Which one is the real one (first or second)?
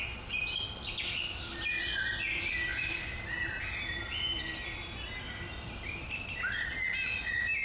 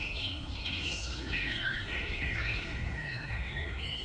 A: first